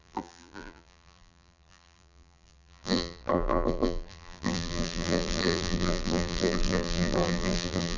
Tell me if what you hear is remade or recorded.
remade